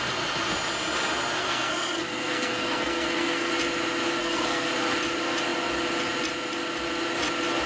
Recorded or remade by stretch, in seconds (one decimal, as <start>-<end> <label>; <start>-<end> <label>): 0.0-1.4 recorded; 1.4-3.5 remade; 3.5-4.2 recorded; 4.2-4.7 remade; 4.7-7.7 recorded